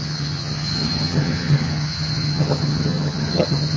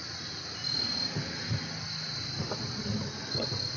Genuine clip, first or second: second